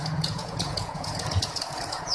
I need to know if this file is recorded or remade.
remade